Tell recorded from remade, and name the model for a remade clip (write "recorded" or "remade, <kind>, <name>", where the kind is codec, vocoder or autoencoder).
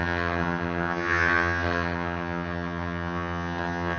remade, vocoder, HiFi-GAN